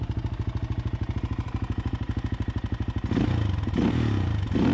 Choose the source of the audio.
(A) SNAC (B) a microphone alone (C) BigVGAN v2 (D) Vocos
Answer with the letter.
B